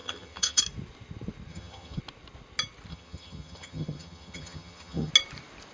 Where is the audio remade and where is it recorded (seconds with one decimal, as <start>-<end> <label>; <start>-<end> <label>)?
0.0-0.6 remade; 0.6-1.5 recorded; 1.5-2.0 remade; 2.0-2.9 recorded; 2.9-5.1 remade; 5.1-5.7 recorded